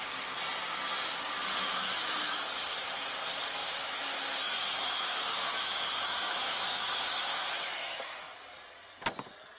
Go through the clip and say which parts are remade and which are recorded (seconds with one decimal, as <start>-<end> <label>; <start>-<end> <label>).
0.0-1.8 recorded; 1.8-2.5 remade; 2.5-3.6 recorded; 3.6-8.2 remade; 8.2-9.6 recorded